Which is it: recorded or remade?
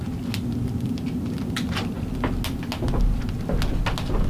recorded